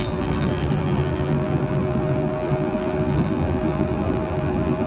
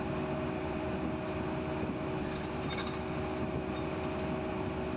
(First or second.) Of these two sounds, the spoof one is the first